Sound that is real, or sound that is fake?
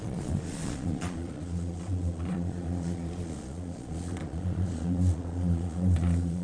fake